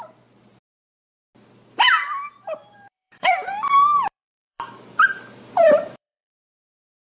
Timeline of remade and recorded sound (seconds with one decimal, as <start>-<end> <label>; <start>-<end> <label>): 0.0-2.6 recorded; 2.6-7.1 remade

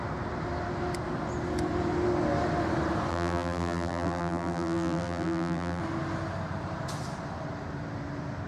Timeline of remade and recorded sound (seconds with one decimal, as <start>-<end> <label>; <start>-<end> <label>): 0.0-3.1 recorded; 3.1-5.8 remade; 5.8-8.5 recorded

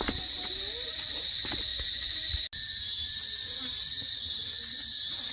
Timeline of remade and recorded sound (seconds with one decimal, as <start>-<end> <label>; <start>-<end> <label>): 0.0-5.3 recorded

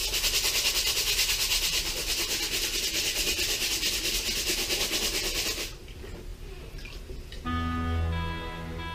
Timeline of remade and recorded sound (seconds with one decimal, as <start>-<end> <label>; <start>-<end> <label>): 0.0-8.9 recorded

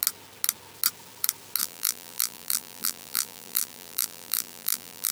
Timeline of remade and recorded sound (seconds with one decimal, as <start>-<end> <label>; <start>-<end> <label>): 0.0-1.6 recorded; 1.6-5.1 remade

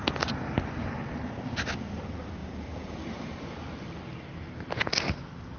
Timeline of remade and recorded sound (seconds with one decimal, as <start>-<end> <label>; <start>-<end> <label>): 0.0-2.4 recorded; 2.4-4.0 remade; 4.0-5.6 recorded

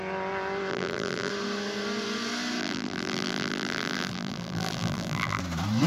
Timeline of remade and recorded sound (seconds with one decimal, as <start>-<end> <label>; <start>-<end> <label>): 0.0-0.7 recorded; 0.7-1.3 remade; 1.3-2.6 recorded; 2.6-5.4 remade; 5.4-5.9 recorded